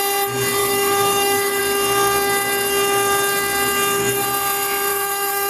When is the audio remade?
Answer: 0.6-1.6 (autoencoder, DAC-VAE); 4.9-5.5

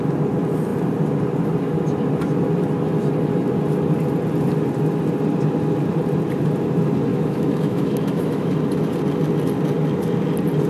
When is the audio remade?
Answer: 7.1-8.5 (autoencoder, DAC-VAE)

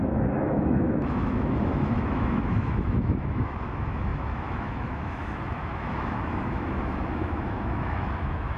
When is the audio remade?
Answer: 0.0-8.6 (autoencoder, DAC-VAE)

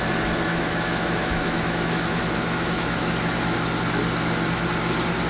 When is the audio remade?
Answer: 0.5-3.1 (autoencoder, DAC-VAE)

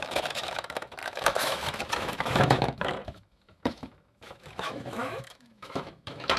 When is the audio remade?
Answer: 0.0-6.4 (autoencoder, DAC-VAE)